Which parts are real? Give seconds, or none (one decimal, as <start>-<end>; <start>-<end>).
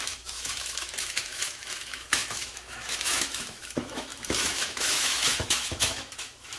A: none